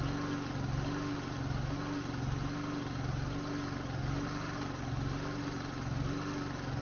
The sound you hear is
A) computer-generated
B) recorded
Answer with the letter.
B